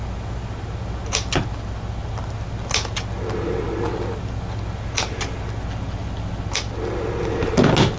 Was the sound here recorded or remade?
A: recorded